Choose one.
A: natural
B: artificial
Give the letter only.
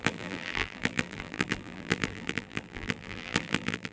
B